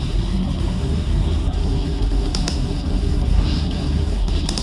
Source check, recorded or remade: remade